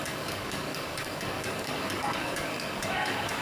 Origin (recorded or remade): remade